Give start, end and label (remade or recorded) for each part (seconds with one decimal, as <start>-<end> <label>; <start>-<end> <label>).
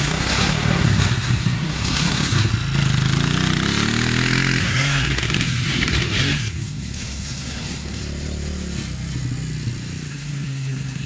0.0-2.5 remade; 2.5-4.6 recorded; 4.6-8.0 remade; 8.0-10.1 recorded; 10.1-11.1 remade